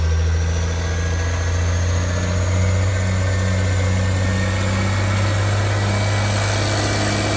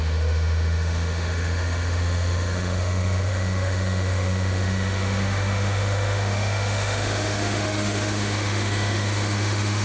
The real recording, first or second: first